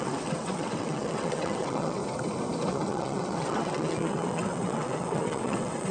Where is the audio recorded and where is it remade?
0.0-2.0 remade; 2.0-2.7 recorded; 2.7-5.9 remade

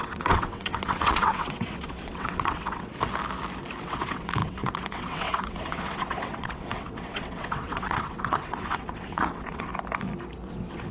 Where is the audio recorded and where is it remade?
0.0-2.9 remade; 2.9-3.8 recorded; 3.8-9.7 remade; 9.7-10.5 recorded; 10.5-10.9 remade

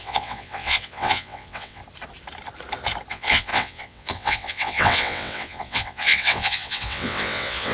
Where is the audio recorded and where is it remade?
0.0-1.8 remade; 1.8-3.1 recorded; 3.1-7.7 remade

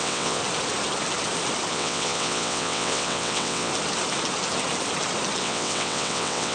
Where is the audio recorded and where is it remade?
0.0-0.4 remade; 0.4-1.7 recorded; 1.7-3.7 remade; 3.7-5.4 recorded; 5.4-6.5 remade

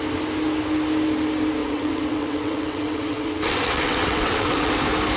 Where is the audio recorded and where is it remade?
0.0-1.6 recorded; 1.6-4.7 remade; 4.7-5.2 recorded

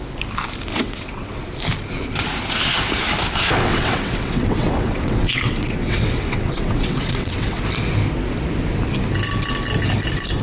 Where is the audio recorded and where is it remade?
0.0-0.7 recorded; 0.7-1.4 remade; 1.4-3.7 recorded; 3.7-7.6 remade; 7.6-10.4 recorded

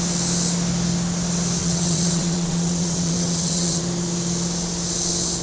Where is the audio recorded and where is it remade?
0.0-1.6 recorded; 1.6-3.8 remade; 3.8-5.4 recorded

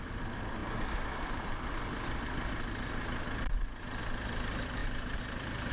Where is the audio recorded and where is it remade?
0.0-5.7 recorded